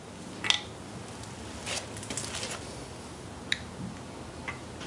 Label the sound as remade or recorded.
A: recorded